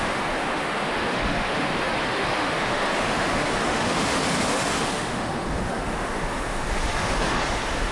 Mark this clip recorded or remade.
remade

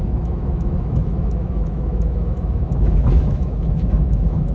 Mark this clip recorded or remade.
remade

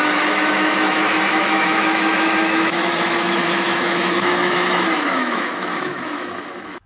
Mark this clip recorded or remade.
remade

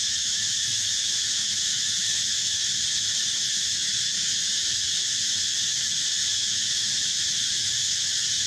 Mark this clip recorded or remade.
remade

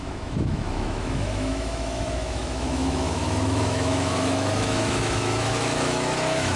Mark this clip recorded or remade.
remade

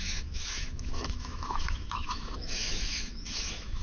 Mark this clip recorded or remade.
remade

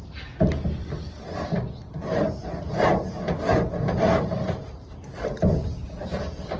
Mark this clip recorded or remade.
recorded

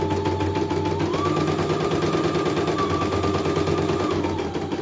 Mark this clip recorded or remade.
recorded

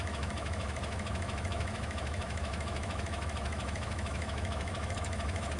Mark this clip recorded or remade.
remade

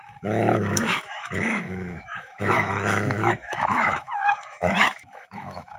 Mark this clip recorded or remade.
remade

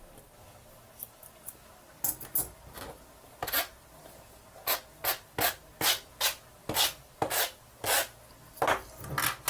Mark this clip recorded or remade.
recorded